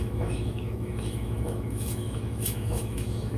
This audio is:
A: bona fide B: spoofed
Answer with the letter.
B